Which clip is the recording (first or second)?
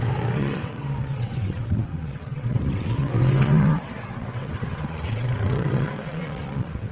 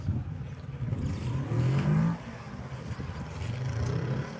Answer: second